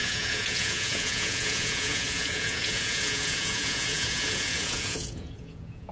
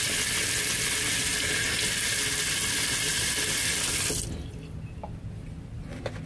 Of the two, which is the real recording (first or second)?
second